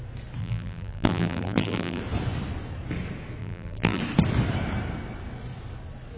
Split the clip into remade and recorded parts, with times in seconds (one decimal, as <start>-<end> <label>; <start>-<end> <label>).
0.0-0.4 recorded; 0.4-2.0 remade; 2.0-3.4 recorded; 3.4-4.0 remade; 4.0-6.2 recorded